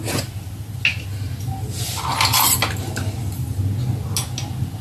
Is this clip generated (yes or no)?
no